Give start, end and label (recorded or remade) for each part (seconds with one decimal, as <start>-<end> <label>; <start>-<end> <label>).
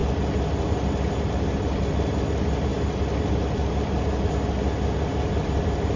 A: 0.0-6.0 recorded